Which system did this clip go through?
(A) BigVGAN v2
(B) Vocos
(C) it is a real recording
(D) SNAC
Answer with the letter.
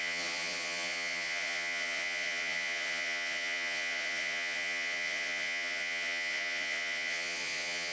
B